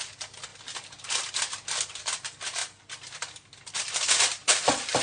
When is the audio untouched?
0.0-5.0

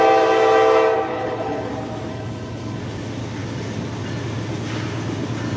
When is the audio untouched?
0.0-1.1; 1.7-2.1; 2.8-5.6

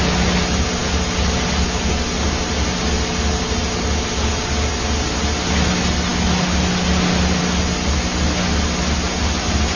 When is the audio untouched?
0.0-9.8

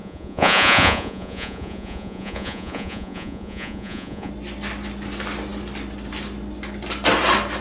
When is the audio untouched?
4.3-7.6